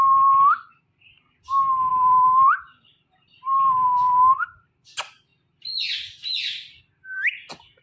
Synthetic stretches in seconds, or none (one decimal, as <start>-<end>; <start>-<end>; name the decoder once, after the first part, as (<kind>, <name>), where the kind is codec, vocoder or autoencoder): 1.9-4.7 (vocoder, BigVGAN v2)